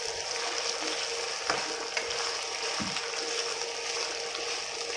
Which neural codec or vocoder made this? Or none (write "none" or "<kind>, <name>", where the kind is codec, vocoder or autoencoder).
none